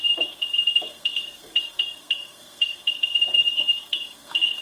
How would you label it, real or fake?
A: fake